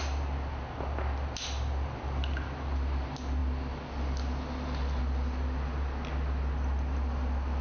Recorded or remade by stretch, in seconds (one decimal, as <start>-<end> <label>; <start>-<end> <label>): 0.0-7.6 recorded